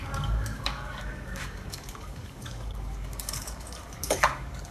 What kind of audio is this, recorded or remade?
remade